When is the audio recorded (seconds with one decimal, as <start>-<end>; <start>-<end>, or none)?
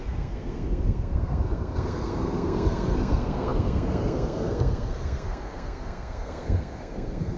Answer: none